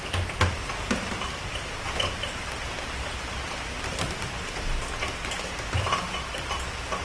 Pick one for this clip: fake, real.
real